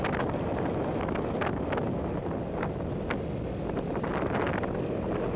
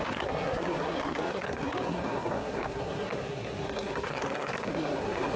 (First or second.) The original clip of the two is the first